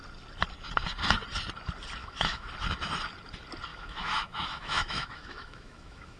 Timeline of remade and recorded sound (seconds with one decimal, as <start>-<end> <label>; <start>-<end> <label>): 0.0-2.0 recorded; 2.0-2.5 remade; 2.5-3.7 recorded; 3.7-6.2 remade